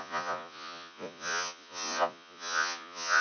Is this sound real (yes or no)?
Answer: no